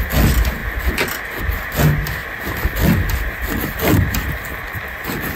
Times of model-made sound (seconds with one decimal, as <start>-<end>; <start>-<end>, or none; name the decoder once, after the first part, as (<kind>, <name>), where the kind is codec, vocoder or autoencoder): none